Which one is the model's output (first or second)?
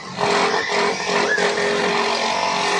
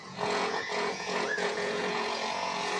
second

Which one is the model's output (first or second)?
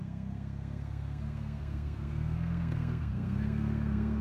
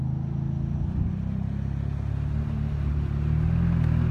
first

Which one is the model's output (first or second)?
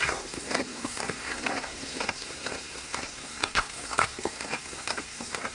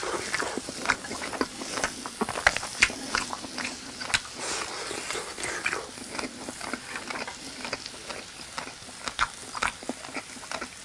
first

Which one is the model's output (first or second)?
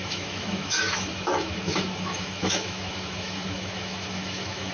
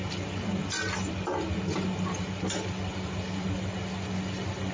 first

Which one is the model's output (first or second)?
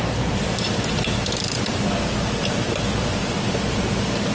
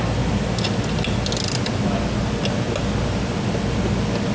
first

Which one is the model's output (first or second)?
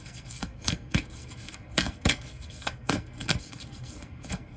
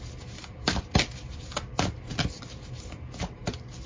first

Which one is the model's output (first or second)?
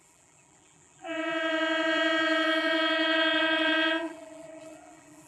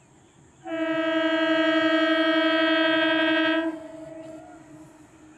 first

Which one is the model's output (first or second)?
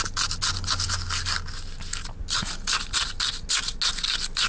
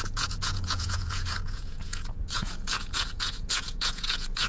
second